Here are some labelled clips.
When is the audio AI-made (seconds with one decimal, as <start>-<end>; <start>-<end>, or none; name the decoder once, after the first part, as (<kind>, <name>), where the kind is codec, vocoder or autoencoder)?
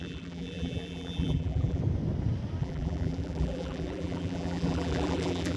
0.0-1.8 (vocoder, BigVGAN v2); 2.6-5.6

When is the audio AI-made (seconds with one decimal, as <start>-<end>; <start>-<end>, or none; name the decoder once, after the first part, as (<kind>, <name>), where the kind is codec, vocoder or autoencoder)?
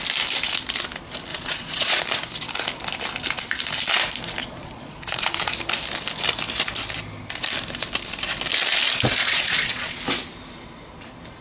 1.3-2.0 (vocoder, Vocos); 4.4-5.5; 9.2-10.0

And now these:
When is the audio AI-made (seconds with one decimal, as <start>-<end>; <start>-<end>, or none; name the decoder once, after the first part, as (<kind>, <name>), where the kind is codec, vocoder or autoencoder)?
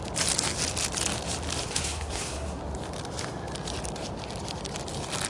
1.6-2.6 (codec, SNAC)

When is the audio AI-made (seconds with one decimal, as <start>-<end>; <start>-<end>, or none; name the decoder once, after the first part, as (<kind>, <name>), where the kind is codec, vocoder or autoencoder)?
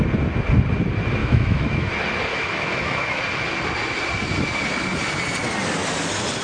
1.2-1.9 (autoencoder, DAC-VAE); 2.3-3.2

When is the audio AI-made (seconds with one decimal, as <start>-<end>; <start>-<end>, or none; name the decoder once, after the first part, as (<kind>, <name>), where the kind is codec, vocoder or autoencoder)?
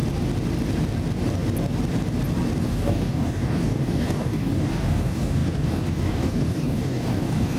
2.6-7.6 (codec, DAC)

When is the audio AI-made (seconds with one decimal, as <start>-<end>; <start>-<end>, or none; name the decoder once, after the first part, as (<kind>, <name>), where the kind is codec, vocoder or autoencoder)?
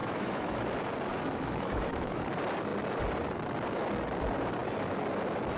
0.0-0.7 (autoencoder, DAC-VAE); 1.1-2.2